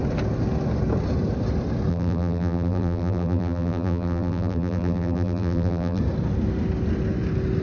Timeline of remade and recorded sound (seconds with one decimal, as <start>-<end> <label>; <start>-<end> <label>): 0.0-1.9 recorded; 1.9-6.0 remade; 6.0-7.6 recorded